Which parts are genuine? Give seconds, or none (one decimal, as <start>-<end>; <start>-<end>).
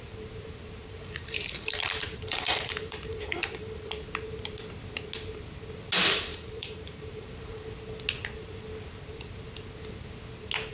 0.0-0.8; 3.9-6.3; 7.7-10.7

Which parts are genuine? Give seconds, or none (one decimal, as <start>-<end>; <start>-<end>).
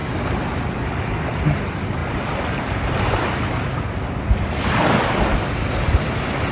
0.0-6.5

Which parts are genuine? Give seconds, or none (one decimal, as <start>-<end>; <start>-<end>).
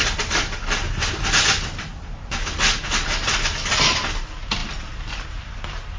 0.0-4.6; 5.3-6.0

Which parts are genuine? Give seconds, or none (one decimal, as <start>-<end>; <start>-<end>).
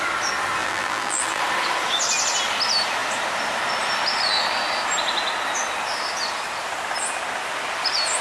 0.0-0.6; 1.4-8.2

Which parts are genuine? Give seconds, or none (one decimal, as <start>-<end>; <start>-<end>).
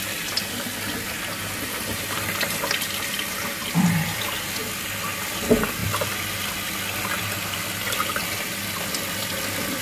0.0-5.8; 6.4-9.8